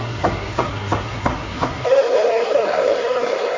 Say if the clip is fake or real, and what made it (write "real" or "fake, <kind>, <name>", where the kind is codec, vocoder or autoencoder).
fake, codec, SNAC